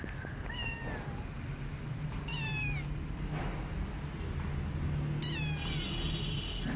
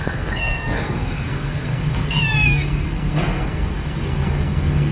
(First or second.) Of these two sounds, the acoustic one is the first